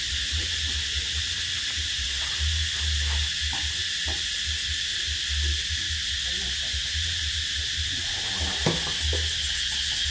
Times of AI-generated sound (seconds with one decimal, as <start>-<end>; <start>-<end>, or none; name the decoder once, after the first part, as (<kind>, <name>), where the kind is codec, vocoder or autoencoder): none